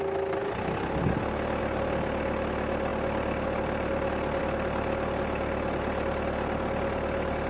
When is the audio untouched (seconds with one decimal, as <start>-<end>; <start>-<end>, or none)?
0.0-7.5